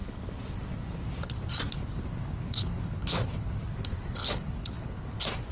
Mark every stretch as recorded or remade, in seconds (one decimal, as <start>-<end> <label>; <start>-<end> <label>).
0.0-2.1 recorded; 2.1-3.6 remade; 3.6-4.2 recorded; 4.2-5.1 remade; 5.1-5.5 recorded